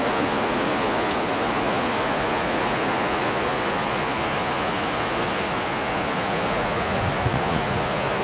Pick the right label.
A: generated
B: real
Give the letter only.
A